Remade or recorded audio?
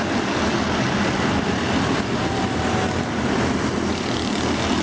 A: recorded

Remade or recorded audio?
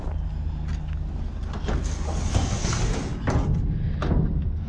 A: recorded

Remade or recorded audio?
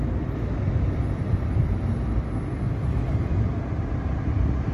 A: recorded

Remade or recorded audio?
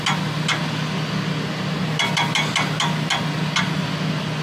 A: recorded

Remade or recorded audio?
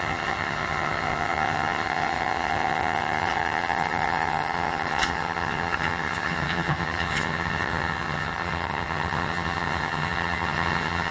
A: remade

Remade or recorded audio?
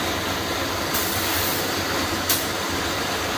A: recorded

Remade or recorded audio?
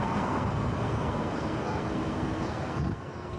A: remade